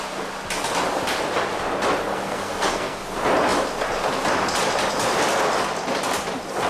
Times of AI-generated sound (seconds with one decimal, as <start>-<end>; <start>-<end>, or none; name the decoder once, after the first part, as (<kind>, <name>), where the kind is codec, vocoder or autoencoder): 2.1-3.0 (codec, SNAC)